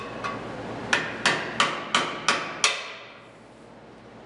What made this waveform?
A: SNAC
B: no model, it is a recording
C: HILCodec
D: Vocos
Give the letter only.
B